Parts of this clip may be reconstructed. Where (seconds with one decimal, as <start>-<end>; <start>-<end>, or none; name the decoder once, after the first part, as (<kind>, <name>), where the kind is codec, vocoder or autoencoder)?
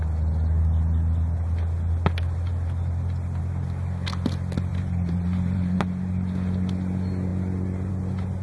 4.7-5.8 (vocoder, BigVGAN v2)